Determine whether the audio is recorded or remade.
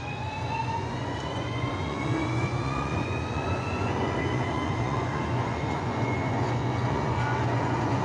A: remade